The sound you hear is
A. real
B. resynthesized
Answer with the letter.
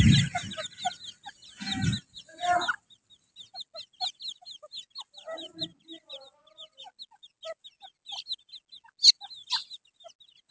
A